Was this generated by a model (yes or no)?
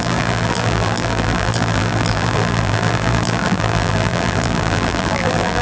yes